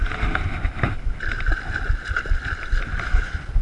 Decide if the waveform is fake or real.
real